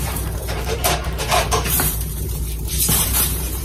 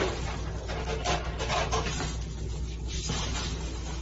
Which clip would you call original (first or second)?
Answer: second